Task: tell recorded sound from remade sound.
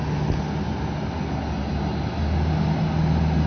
recorded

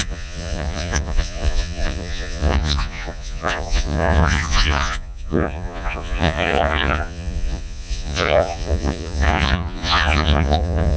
remade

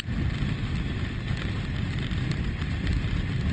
recorded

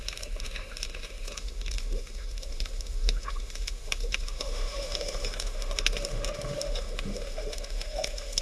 remade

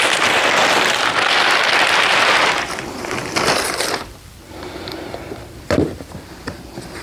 remade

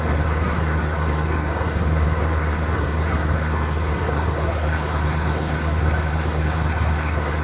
remade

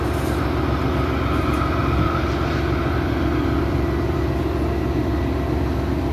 recorded